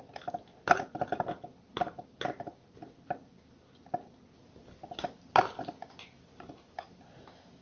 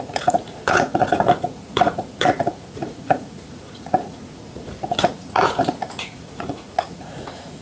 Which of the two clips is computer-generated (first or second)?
second